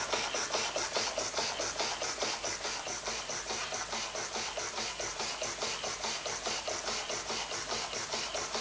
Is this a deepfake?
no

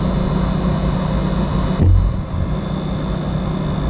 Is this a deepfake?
no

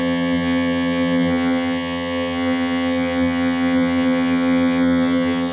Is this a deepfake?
yes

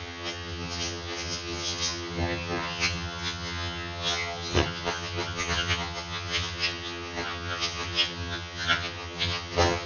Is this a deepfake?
yes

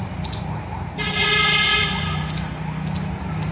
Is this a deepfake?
no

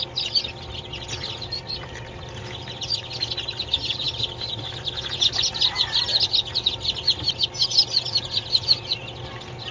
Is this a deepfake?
no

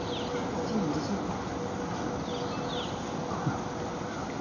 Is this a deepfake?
no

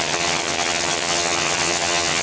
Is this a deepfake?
yes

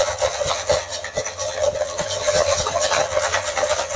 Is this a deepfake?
yes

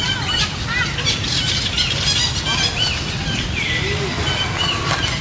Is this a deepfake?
no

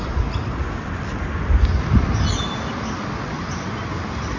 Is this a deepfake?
no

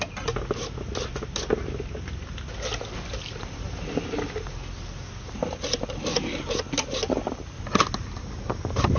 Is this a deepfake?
no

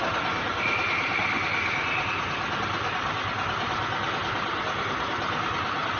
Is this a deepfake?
no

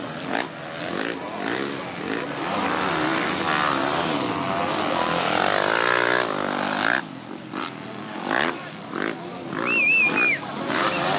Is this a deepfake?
no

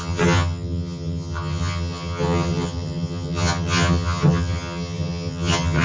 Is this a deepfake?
yes